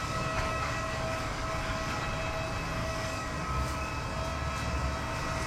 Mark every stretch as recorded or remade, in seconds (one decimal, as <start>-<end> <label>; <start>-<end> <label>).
0.0-2.0 remade; 2.0-2.8 recorded; 2.8-3.9 remade; 3.9-5.5 recorded